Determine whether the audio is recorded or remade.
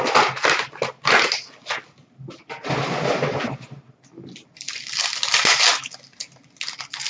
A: recorded